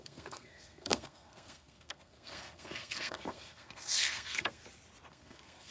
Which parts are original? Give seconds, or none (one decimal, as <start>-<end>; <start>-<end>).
4.6-5.1